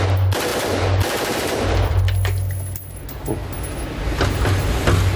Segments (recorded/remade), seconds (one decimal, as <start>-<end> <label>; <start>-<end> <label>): 0.0-0.5 recorded; 0.5-2.0 remade; 2.0-5.2 recorded